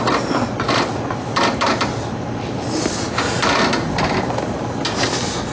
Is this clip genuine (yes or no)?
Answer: yes